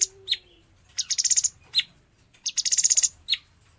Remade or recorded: remade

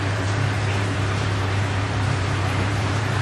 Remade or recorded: remade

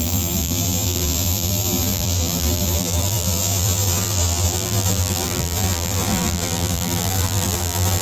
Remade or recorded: remade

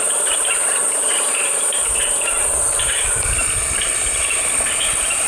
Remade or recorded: remade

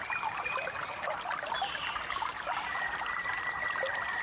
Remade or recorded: recorded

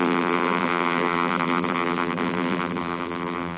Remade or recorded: remade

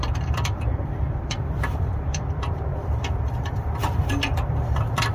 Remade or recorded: remade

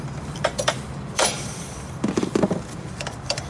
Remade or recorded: remade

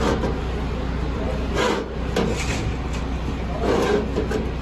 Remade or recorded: recorded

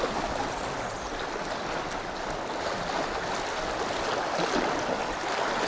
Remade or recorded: recorded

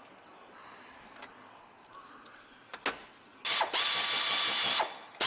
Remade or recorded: recorded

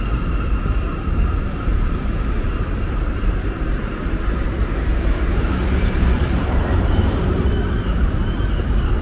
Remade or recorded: remade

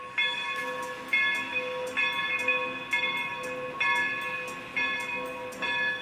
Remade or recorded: recorded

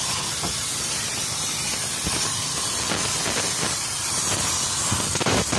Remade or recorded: remade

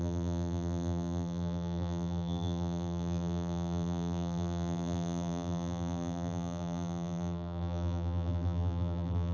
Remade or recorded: remade